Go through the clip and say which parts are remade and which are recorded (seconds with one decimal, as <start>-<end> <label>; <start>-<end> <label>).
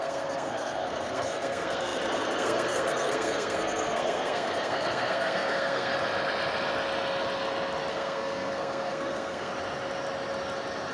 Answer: 0.0-5.9 remade; 5.9-7.9 recorded; 7.9-9.5 remade; 9.5-10.9 recorded